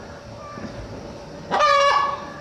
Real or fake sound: real